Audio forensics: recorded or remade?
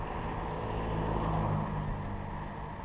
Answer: recorded